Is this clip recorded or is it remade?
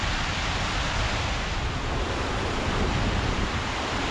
recorded